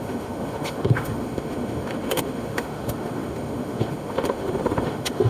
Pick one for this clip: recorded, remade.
remade